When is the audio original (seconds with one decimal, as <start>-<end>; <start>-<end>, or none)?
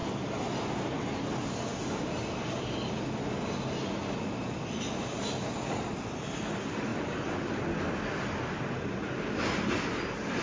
0.0-10.4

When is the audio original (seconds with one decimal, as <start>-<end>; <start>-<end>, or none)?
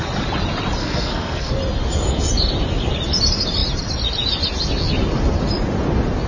0.0-0.8; 1.5-6.3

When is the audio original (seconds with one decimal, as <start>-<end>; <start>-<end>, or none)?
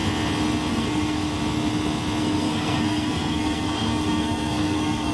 0.0-0.7; 1.3-2.2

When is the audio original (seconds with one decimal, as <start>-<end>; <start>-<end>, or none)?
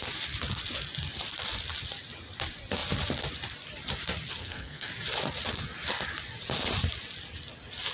0.0-4.4; 4.9-7.9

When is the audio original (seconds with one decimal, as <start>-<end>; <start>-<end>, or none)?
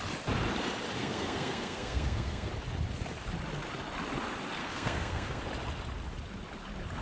0.0-1.0; 2.5-4.6; 5.4-7.0